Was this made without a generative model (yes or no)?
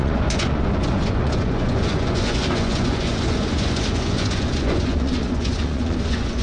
no